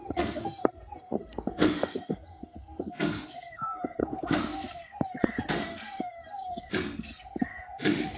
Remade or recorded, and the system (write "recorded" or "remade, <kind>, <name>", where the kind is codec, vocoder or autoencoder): remade, codec, SNAC